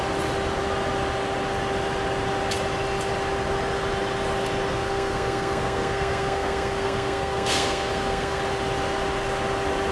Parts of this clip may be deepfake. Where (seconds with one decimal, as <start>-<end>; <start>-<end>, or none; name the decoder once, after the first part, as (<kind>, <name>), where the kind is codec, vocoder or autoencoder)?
4.7-8.4 (codec, SNAC)